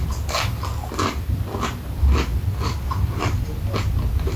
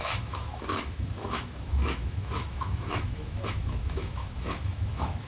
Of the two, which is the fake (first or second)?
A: second